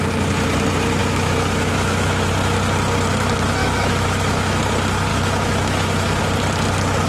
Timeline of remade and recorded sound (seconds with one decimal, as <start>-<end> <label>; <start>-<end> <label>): 0.0-1.0 recorded; 1.0-2.3 remade; 2.3-3.6 recorded; 3.6-4.6 remade; 4.6-5.1 recorded; 5.1-6.2 remade; 6.2-7.1 recorded